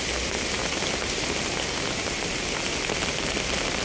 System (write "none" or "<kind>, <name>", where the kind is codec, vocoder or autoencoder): none